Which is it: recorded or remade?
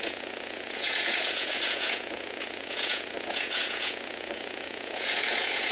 remade